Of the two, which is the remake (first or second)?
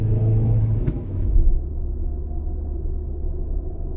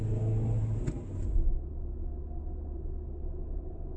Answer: first